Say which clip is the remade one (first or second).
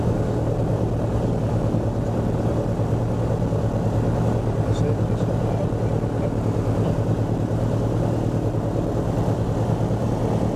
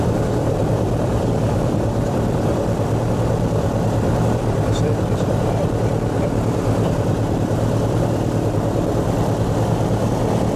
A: second